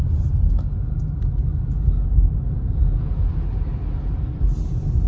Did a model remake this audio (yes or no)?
no